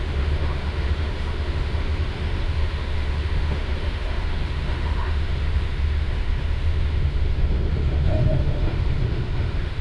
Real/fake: fake